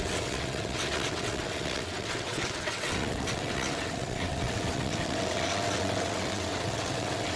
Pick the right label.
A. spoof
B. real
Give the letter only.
A